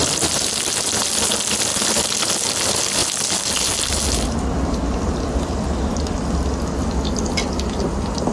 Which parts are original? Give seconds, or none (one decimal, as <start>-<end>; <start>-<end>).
0.0-8.3